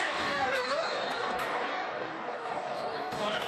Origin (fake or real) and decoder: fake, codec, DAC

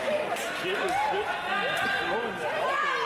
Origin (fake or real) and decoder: real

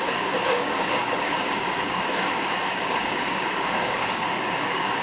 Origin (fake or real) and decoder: fake, codec, DAC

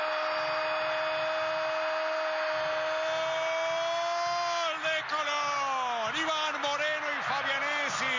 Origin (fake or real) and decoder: real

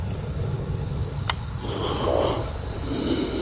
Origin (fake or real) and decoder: real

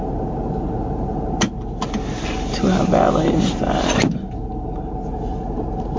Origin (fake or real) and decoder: real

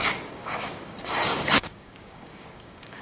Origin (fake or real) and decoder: fake, codec, DAC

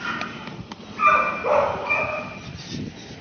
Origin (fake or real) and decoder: real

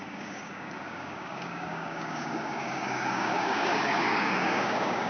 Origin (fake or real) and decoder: fake, codec, DAC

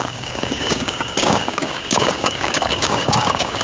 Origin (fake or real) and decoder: fake, codec, DAC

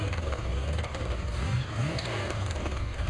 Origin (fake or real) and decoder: fake, codec, DAC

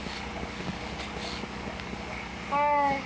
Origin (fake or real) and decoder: fake, codec, DAC